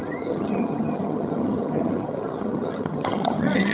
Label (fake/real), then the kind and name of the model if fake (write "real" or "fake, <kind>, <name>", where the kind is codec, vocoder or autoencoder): fake, vocoder, HiFi-GAN